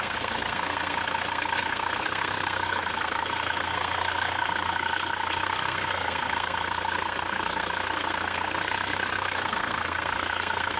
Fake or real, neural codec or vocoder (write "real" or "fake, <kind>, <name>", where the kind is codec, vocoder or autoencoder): fake, codec, SNAC